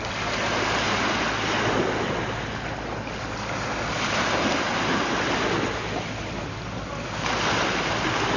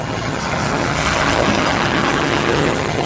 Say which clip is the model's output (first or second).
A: second